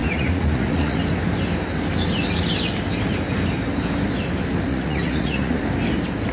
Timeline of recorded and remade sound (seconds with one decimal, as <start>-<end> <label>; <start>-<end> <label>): 0.0-1.0 remade; 1.0-4.7 recorded; 4.7-5.6 remade; 5.6-6.3 recorded